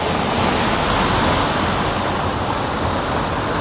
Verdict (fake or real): real